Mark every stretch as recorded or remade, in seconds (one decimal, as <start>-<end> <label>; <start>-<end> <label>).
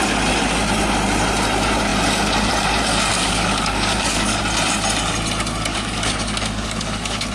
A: 0.0-3.1 recorded; 3.1-4.4 remade; 4.4-5.7 recorded; 5.7-7.3 remade